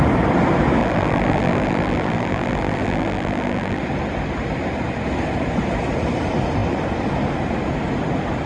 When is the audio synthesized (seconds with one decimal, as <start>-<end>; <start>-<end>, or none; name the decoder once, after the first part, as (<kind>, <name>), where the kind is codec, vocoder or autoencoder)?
0.8-3.8 (vocoder, BigVGAN v2)